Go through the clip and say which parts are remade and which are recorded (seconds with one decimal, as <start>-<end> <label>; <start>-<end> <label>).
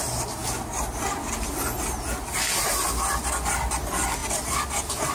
0.0-5.1 recorded